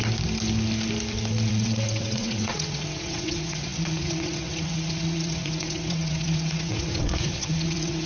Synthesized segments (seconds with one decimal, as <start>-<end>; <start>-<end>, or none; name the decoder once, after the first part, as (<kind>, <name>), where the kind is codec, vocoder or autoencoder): 1.5-8.1 (vocoder, WaveNeXt)